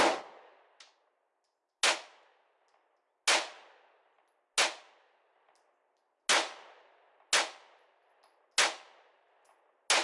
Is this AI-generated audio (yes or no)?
no